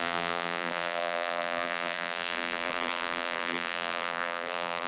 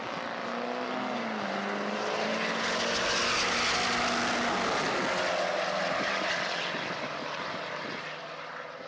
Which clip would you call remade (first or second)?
first